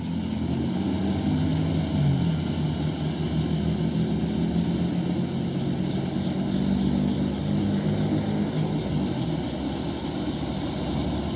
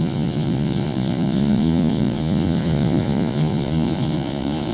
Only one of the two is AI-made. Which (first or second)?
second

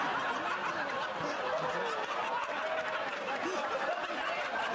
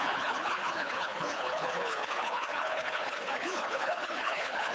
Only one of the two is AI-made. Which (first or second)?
second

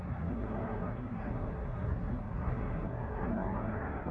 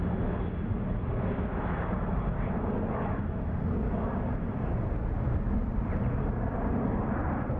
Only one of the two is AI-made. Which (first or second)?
first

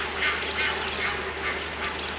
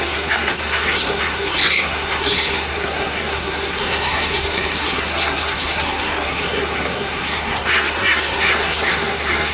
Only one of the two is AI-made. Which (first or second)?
second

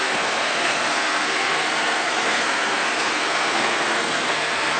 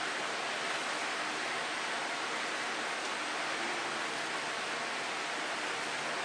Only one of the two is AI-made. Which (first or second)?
first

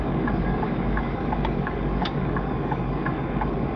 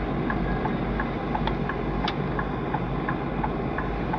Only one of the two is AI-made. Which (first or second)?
first